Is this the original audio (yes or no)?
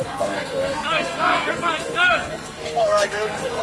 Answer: no